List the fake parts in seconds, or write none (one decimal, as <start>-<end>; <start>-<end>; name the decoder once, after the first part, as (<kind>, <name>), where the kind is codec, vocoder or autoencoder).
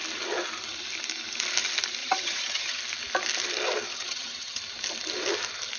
2.0-2.8 (vocoder, HiFi-GAN); 3.9-4.6